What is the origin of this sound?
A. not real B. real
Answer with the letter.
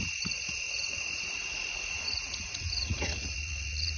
A